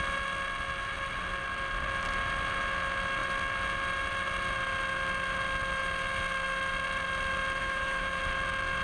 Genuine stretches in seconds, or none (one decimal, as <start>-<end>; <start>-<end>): 0.0-7.6; 8.2-8.8